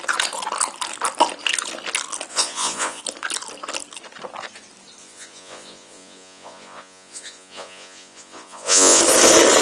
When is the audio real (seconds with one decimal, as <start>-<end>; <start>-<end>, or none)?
0.0-2.3; 3.0-5.0; 9.0-9.6